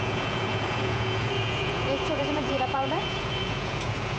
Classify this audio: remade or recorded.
remade